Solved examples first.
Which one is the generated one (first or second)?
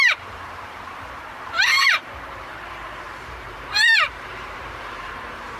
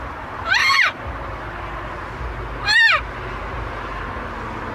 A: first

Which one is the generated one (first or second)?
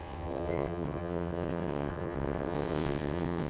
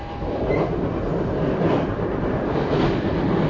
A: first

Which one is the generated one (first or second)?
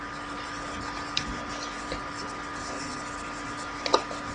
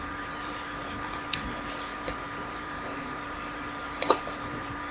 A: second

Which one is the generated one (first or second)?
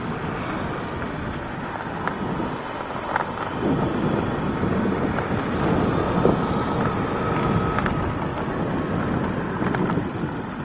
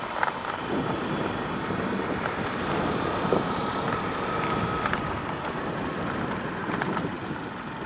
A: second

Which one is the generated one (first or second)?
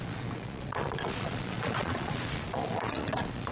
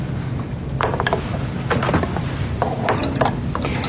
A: first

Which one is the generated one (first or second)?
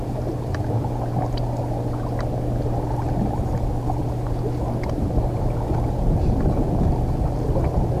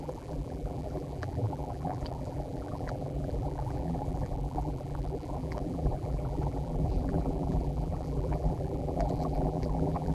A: second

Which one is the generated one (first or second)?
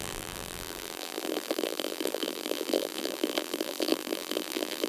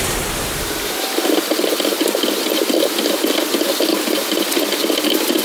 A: first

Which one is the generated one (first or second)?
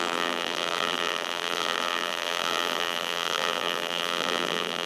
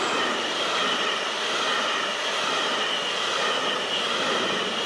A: first